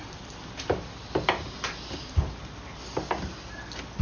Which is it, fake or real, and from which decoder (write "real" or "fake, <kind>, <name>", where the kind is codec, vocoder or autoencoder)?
real